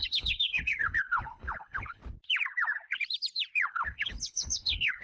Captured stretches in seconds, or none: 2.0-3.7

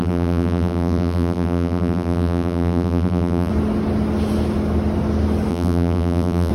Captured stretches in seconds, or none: 3.5-5.5